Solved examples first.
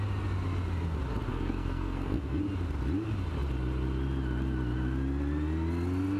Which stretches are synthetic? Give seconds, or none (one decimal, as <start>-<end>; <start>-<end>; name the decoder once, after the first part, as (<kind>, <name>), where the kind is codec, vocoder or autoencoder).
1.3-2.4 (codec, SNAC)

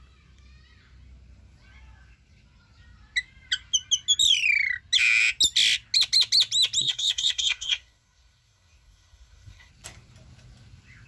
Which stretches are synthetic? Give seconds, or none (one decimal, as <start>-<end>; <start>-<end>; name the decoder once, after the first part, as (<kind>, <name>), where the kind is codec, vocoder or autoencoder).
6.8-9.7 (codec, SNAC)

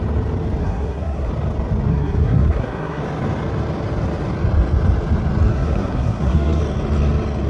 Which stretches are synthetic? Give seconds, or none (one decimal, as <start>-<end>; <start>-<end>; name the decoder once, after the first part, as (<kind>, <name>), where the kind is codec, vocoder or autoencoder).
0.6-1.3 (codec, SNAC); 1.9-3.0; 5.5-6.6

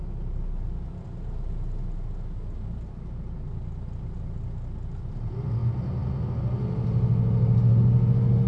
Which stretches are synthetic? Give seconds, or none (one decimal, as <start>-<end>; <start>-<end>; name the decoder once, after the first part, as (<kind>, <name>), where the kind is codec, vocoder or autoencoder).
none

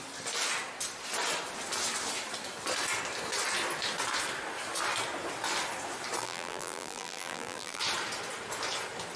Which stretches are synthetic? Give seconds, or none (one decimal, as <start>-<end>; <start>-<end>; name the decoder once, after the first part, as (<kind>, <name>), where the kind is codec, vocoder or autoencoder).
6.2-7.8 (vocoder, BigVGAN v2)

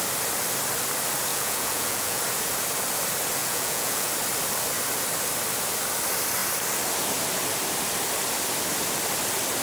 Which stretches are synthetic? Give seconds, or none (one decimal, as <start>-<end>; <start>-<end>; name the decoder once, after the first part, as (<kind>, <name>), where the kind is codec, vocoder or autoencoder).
1.3-2.2 (vocoder, Vocos); 3.4-4.1

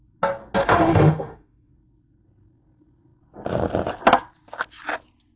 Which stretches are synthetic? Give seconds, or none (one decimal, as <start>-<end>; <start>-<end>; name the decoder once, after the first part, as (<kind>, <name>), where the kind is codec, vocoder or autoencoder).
0.6-1.7 (autoencoder, DAC-VAE)